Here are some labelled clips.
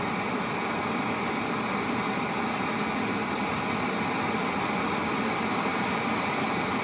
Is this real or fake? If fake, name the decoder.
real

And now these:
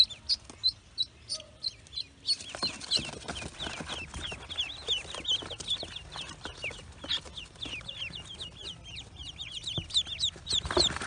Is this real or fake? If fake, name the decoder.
real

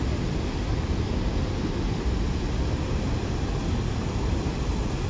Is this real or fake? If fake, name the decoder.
real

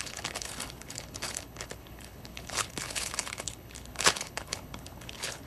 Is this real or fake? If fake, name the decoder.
fake, codec, HILCodec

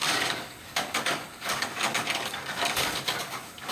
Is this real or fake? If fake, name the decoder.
fake, codec, DAC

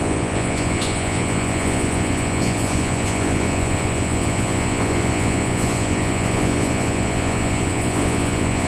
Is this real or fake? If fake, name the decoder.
fake, vocoder, Vocos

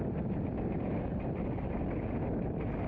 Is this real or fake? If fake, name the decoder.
real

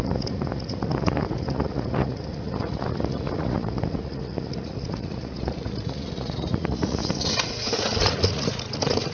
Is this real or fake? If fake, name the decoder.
fake, vocoder, Vocos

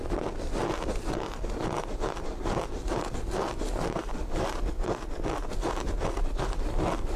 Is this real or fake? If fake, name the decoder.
real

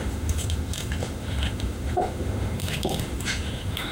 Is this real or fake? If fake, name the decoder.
fake, autoencoder, DAC-VAE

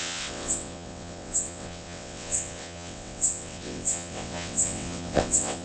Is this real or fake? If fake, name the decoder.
fake, vocoder, WaveNeXt